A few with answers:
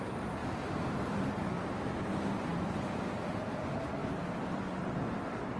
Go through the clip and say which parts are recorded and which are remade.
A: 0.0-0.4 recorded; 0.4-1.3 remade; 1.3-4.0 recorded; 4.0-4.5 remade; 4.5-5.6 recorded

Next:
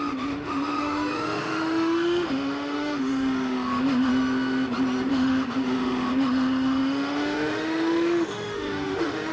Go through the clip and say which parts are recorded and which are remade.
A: 0.0-4.1 remade; 4.1-5.1 recorded; 5.1-9.3 remade

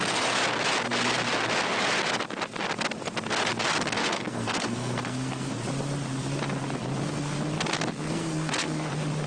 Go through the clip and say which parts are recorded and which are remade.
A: 0.0-4.0 recorded; 4.0-5.5 remade; 5.5-8.0 recorded; 8.0-8.9 remade; 8.9-9.3 recorded